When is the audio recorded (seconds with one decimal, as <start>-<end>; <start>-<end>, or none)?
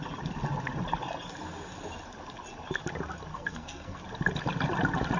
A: 0.0-3.3; 4.0-5.2